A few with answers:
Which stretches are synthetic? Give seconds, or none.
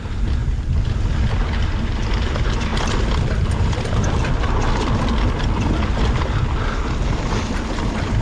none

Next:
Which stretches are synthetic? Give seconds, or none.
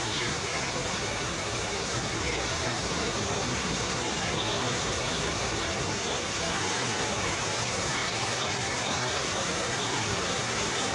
0.0-10.9 (codec, SNAC)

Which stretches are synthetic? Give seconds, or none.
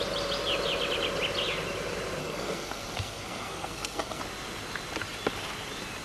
2.2-4.2 (codec, SNAC)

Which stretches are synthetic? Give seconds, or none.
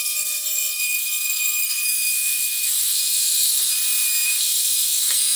0.0-3.7 (codec, SNAC); 4.4-5.4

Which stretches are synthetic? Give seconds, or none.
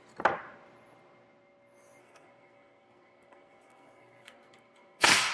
2.0-5.3 (codec, SNAC)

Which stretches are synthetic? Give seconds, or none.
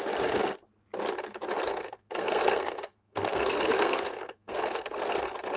1.7-5.1 (codec, SNAC)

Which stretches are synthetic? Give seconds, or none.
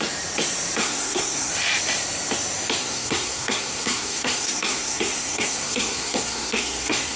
0.8-1.5 (codec, SNAC); 2.8-7.2